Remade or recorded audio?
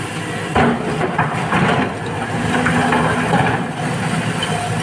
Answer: recorded